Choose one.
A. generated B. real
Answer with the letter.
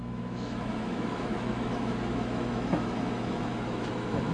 A